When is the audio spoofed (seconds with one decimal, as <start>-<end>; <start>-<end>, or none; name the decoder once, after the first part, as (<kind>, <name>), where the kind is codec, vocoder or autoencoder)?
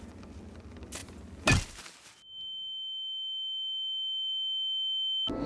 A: none